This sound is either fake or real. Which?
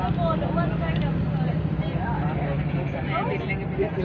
real